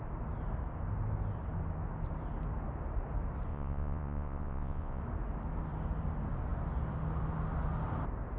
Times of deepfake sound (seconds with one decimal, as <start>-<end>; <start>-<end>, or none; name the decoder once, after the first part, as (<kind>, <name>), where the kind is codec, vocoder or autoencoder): 3.5-5.0 (vocoder, Vocos)